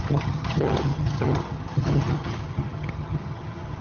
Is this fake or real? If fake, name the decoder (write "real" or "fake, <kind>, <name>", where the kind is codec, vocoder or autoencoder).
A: fake, vocoder, HiFi-GAN